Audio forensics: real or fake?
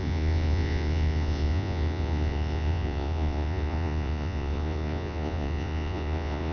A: fake